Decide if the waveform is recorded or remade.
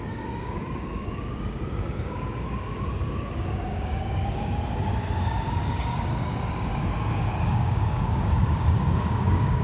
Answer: remade